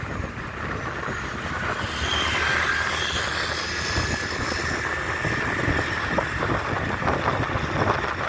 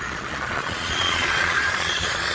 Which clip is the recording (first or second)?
first